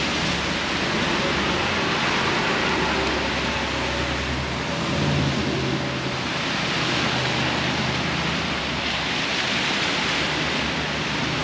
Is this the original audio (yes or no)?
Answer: yes